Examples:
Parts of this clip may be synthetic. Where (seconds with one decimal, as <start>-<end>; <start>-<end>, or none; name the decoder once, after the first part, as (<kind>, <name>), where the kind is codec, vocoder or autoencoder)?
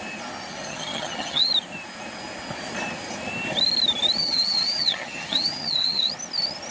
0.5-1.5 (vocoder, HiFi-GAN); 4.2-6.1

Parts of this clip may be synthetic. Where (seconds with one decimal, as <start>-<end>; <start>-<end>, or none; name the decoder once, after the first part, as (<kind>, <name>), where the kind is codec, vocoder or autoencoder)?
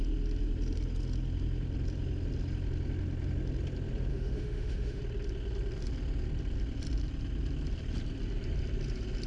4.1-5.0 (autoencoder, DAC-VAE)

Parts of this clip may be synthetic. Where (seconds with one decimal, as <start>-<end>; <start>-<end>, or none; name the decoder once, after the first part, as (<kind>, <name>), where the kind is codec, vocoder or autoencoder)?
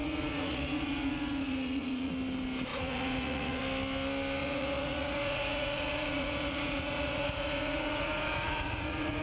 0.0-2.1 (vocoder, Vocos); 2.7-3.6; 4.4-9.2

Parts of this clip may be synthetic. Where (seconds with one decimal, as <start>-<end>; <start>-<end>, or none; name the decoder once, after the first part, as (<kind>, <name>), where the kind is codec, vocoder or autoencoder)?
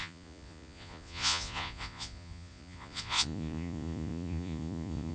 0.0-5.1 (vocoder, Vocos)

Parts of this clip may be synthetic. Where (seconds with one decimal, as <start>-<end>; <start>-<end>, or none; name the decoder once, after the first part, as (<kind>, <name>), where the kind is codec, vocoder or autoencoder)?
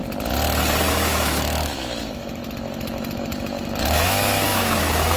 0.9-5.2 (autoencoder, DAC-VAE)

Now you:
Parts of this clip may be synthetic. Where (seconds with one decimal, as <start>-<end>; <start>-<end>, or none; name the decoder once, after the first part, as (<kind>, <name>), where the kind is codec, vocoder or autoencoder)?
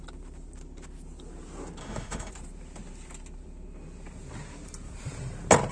1.8-2.3 (autoencoder, DAC-VAE)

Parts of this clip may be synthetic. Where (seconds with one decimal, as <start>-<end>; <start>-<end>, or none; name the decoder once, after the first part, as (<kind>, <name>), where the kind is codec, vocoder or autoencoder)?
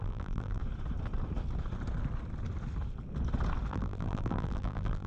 0.0-0.6 (vocoder, BigVGAN v2); 3.7-5.1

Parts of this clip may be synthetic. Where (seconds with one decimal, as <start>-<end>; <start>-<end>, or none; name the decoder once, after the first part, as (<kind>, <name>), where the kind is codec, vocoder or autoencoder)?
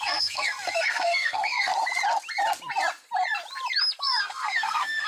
0.0-1.7 (codec, SNAC); 4.0-5.1